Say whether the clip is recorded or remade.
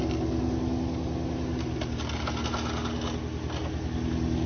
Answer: recorded